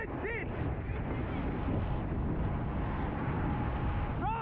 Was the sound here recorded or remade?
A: recorded